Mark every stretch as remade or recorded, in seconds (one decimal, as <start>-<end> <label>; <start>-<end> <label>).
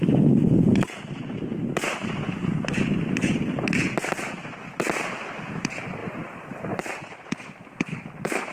0.0-0.7 remade; 0.7-5.2 recorded; 5.2-8.5 remade